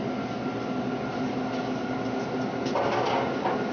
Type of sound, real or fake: real